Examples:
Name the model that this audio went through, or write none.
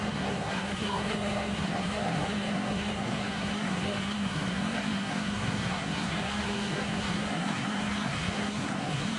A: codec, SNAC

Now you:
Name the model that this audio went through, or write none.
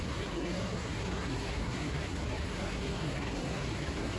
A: codec, SNAC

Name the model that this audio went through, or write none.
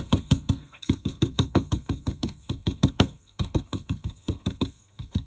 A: codec, SNAC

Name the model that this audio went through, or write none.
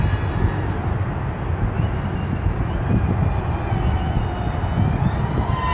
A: none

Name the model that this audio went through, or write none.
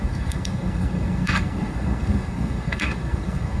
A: codec, SNAC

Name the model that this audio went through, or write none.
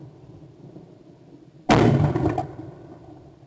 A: none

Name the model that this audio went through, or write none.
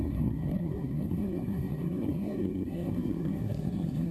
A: codec, SNAC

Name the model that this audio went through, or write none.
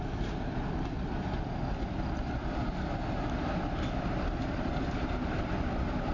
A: none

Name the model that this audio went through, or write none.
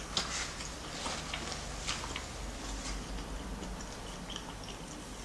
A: none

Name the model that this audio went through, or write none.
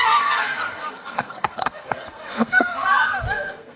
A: codec, SNAC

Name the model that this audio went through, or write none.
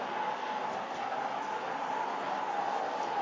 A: none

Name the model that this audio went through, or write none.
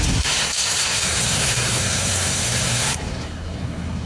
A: codec, SNAC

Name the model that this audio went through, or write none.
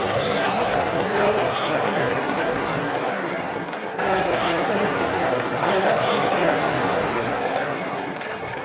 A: codec, SNAC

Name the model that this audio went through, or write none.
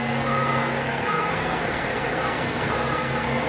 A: codec, SNAC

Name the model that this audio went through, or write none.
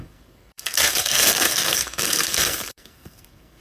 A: codec, SNAC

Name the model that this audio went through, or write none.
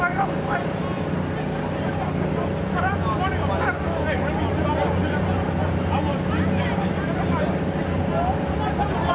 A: none